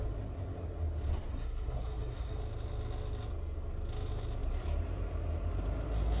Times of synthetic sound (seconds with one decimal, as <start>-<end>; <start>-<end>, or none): 1.3-2.4